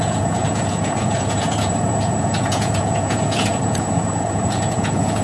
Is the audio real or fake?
fake